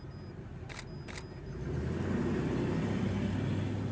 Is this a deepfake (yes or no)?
no